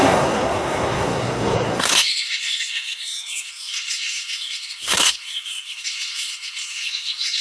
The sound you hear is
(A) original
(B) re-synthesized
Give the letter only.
B